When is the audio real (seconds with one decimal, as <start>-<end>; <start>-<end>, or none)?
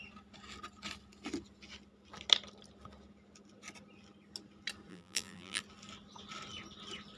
0.0-4.9; 5.6-7.2